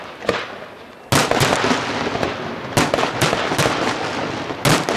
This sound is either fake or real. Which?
real